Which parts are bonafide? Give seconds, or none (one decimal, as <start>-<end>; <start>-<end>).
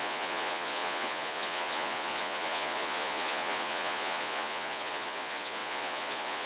none